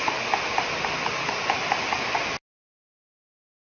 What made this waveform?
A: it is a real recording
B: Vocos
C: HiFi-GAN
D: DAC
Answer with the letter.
A